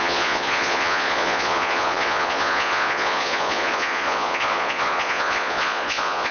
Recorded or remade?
remade